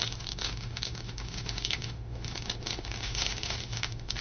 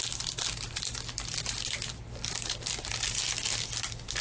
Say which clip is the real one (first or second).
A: second